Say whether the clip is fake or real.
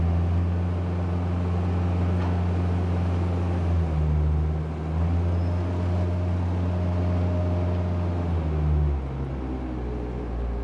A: real